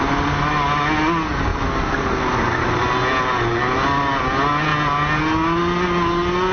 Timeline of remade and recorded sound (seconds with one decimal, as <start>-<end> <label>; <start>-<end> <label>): 0.0-6.5 recorded